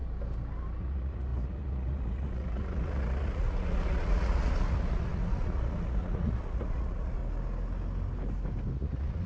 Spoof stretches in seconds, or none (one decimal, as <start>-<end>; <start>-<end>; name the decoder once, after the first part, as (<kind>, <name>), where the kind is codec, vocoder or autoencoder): 0.8-7.2 (vocoder, Vocos); 8.7-9.3